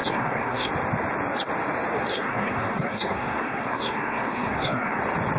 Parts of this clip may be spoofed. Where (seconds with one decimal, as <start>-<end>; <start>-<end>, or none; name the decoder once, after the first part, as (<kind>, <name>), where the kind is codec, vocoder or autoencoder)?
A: 0.0-0.7 (codec, SNAC); 2.1-5.0